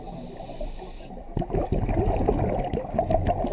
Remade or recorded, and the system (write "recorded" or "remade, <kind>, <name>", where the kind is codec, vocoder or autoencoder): recorded